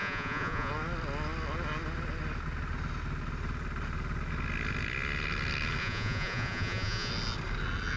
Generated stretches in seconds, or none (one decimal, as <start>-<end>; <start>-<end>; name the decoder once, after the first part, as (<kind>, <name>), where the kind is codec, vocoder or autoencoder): 0.0-0.7 (vocoder, Vocos); 5.8-7.1